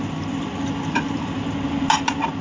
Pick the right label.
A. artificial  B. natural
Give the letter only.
B